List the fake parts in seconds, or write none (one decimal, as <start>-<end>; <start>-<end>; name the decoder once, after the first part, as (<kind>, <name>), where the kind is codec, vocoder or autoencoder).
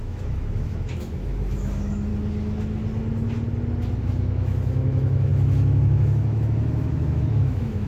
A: 0.0-2.1 (autoencoder, DAC-VAE); 4.0-7.9